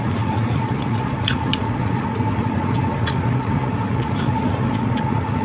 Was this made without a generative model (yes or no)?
no